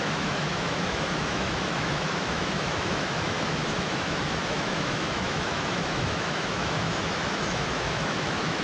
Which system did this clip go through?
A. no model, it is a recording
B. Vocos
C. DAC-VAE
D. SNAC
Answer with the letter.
C